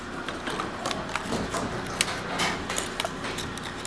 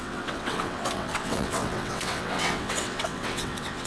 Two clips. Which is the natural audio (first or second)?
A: first